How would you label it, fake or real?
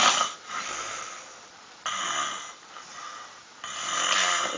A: real